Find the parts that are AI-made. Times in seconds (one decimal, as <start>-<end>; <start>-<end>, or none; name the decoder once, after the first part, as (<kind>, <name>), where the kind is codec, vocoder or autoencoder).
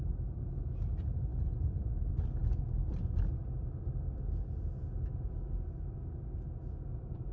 none